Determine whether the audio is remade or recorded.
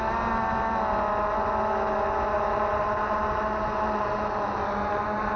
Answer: recorded